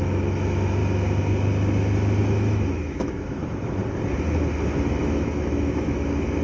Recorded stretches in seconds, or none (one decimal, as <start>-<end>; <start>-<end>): 0.8-2.2; 3.8-4.9